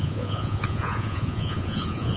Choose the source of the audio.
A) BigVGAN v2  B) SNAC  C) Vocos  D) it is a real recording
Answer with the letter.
C